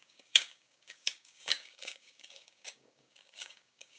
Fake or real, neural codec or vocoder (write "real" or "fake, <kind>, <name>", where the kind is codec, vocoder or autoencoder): fake, codec, DAC